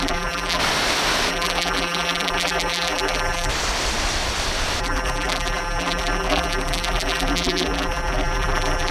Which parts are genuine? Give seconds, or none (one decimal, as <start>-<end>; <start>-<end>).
0.6-1.3; 3.5-4.8

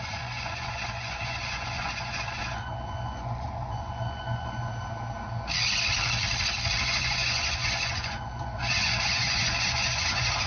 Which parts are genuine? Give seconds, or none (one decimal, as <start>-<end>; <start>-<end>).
4.7-6.8